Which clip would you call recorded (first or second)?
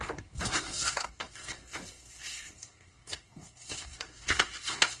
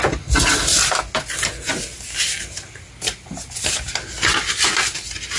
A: second